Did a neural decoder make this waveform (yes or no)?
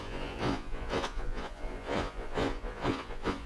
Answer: yes